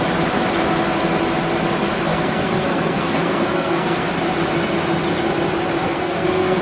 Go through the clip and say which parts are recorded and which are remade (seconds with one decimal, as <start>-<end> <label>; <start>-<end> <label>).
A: 0.0-2.1 recorded; 2.1-4.1 remade; 4.1-5.8 recorded; 5.8-6.6 remade